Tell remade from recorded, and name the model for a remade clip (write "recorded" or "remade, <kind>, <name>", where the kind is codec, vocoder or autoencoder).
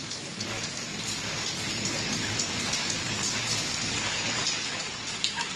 remade, codec, DAC